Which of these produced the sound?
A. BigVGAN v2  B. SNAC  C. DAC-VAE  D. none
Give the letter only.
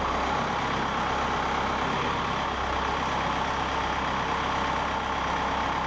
D